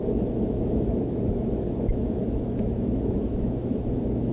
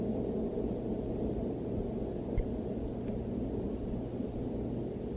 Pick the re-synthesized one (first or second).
first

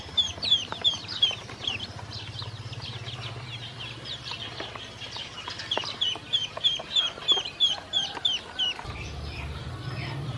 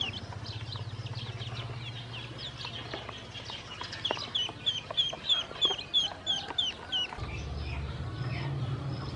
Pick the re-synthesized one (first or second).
first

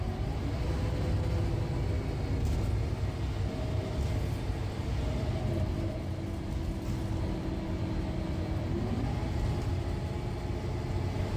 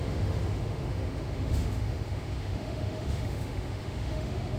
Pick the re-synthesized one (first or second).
second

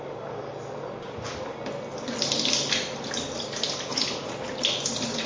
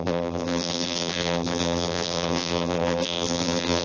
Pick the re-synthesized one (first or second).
second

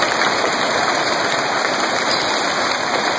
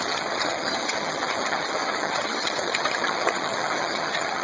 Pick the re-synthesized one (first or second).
second